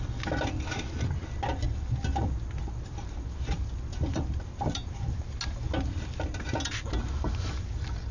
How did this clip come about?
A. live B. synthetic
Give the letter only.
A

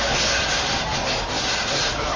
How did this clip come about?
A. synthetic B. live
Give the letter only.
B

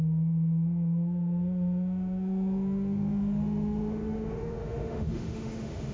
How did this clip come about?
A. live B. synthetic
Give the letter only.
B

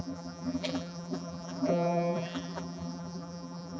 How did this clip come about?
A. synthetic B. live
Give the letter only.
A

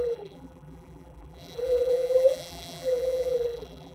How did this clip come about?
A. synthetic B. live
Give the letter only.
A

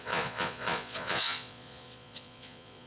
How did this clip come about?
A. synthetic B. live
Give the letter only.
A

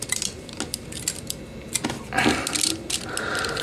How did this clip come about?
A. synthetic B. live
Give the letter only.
B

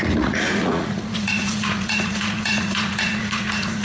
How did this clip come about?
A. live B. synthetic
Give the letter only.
B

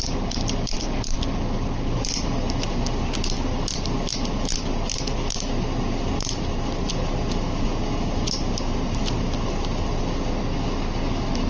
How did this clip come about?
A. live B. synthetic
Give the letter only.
A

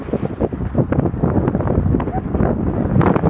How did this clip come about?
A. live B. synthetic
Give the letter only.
A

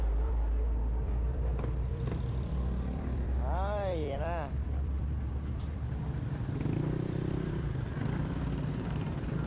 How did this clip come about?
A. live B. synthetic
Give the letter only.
B